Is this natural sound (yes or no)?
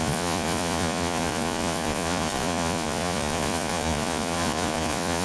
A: no